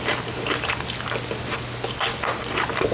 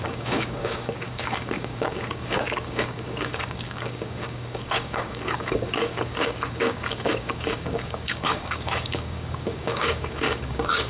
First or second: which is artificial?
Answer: second